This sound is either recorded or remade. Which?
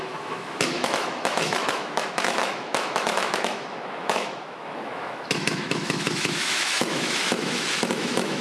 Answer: remade